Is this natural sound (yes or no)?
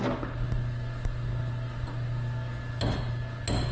yes